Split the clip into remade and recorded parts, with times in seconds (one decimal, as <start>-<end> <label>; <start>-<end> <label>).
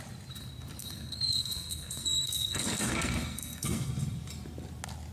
0.0-0.8 recorded; 0.8-3.9 remade; 3.9-5.1 recorded